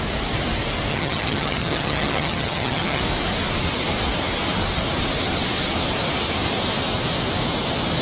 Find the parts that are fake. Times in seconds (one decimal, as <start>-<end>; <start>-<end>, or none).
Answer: 0.9-3.0